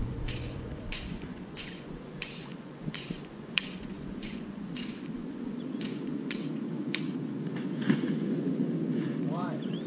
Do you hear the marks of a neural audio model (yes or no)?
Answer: yes